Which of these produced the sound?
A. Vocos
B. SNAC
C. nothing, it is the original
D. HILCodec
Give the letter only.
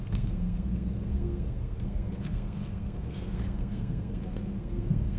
B